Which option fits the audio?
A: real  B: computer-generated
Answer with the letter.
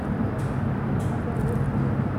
A